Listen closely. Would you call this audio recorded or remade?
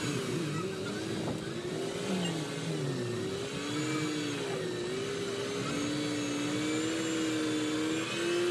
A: recorded